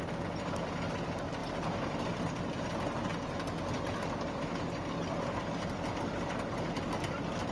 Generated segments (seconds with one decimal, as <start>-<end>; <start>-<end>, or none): none